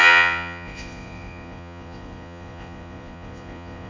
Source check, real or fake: fake